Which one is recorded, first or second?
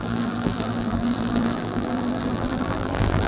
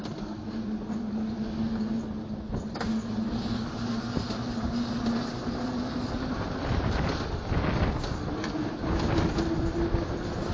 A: second